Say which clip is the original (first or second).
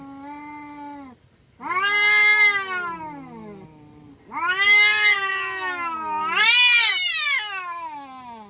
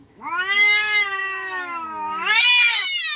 first